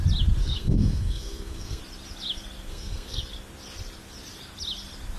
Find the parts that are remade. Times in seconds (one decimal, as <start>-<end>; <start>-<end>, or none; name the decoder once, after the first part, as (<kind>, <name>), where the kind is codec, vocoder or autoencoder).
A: 0.4-1.8 (codec, SNAC); 2.7-3.2